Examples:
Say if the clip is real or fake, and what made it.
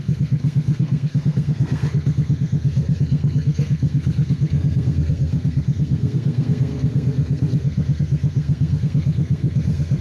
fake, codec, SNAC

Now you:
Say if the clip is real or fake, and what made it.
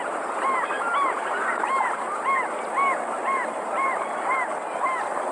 fake, vocoder, BigVGAN v2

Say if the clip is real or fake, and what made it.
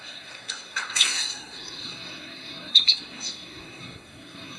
fake, codec, SNAC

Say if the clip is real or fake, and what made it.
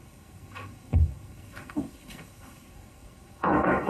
fake, codec, SNAC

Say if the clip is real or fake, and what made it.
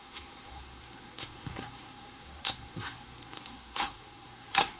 fake, codec, SNAC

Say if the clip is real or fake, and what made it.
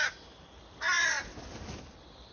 real